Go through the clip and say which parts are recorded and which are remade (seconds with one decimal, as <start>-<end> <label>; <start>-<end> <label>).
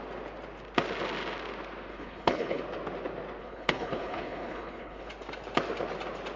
0.0-1.9 recorded; 1.9-2.6 remade; 2.6-3.4 recorded; 3.4-5.1 remade; 5.1-6.4 recorded